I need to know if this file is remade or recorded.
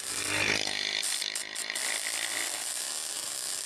recorded